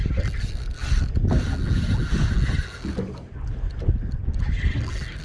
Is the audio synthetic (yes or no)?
no